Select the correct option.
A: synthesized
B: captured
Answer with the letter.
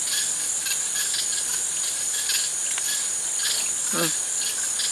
B